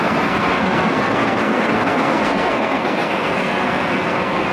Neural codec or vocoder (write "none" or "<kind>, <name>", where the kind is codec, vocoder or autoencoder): codec, SNAC